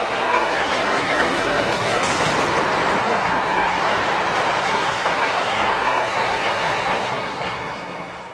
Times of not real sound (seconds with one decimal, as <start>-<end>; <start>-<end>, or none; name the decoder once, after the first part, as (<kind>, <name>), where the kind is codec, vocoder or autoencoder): 0.0-2.3 (codec, SNAC); 3.0-4.0; 4.6-8.3